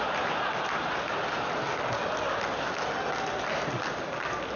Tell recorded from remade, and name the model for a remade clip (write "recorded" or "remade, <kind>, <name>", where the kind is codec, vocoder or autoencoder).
recorded